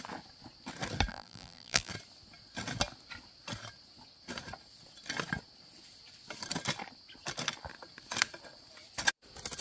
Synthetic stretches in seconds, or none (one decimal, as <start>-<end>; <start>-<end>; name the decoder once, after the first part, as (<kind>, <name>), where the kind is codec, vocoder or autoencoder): 1.1-1.9 (vocoder, BigVGAN v2)